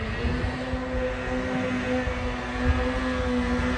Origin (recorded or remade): recorded